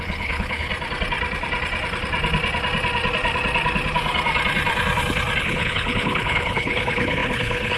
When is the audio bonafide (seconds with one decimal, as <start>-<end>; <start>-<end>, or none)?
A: 0.7-5.4